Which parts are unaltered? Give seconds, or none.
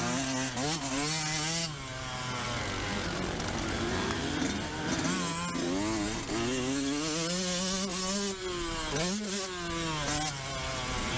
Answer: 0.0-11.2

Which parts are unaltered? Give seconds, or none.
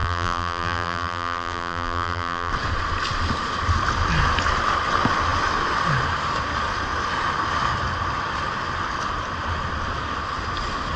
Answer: 2.5-11.0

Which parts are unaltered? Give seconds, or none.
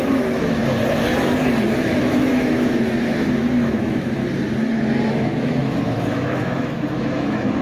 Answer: 0.6-2.0; 4.2-5.1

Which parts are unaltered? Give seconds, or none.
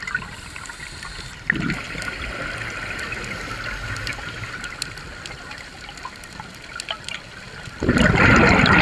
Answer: 0.0-8.8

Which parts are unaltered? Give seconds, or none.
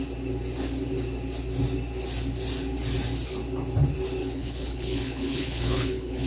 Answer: 0.0-4.2